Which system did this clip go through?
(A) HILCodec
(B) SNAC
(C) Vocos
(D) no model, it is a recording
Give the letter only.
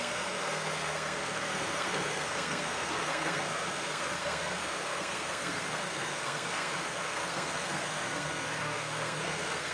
B